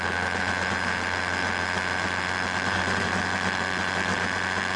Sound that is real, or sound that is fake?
real